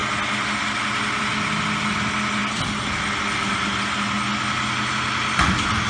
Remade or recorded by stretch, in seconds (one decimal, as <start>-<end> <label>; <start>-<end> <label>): 0.0-5.9 recorded